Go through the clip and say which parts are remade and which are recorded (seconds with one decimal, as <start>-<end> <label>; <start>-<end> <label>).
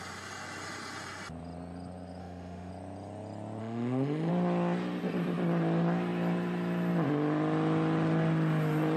0.0-2.2 recorded; 2.2-2.7 remade; 2.7-3.6 recorded; 3.6-4.3 remade; 4.3-9.0 recorded